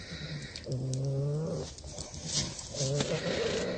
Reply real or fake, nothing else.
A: real